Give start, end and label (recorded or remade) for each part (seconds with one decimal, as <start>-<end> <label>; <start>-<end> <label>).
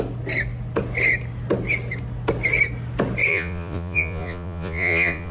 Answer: 0.0-3.3 recorded; 3.3-5.3 remade